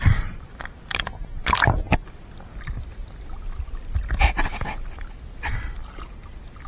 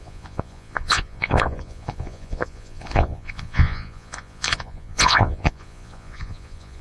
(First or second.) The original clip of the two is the first